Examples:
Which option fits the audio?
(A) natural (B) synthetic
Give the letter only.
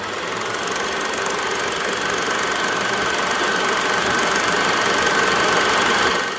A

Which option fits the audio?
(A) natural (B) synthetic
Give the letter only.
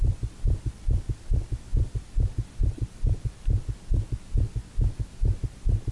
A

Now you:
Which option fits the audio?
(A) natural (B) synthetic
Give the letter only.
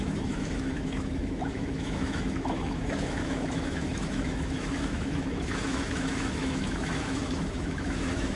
B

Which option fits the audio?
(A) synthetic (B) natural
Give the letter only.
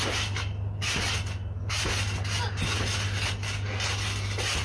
B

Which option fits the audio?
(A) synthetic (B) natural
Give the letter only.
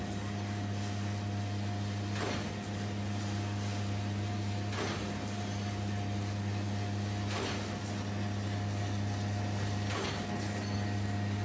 B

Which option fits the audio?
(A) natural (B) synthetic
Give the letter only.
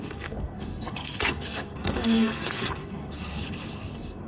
B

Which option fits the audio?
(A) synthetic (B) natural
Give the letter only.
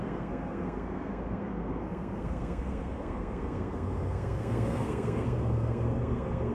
A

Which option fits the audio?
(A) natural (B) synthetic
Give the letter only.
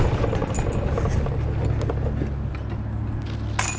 A